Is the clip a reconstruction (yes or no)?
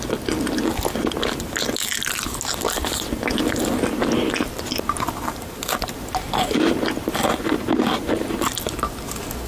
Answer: no